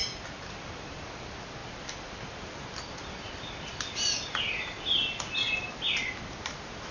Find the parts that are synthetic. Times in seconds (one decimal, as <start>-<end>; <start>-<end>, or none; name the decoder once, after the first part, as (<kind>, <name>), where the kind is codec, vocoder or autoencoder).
none